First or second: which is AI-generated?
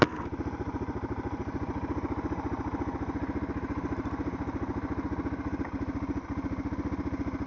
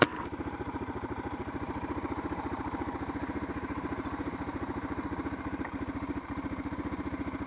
second